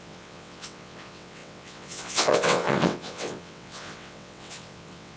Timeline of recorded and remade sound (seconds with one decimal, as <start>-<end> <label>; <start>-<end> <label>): 0.0-5.2 remade